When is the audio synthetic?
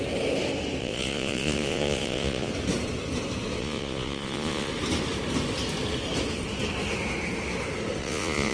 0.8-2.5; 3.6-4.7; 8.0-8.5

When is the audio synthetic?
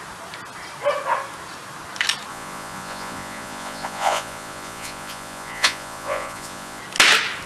2.3-6.8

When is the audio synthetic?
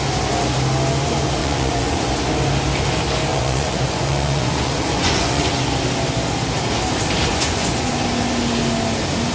1.4-2.1; 3.3-5.5; 7.3-7.9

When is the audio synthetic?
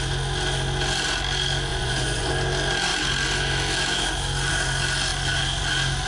1.7-2.3